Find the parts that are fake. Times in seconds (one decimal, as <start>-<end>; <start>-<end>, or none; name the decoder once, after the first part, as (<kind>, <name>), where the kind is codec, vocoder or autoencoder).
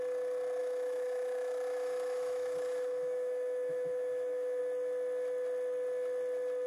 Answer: 0.6-4.6 (autoencoder, DAC-VAE)